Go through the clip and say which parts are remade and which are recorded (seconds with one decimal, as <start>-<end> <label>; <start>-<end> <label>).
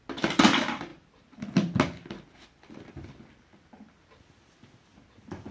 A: 0.0-5.5 recorded